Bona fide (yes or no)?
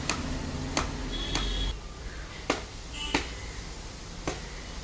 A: yes